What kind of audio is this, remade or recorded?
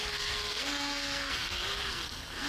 remade